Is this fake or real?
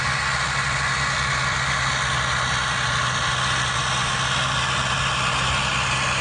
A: real